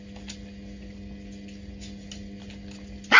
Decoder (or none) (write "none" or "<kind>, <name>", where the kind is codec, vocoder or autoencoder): none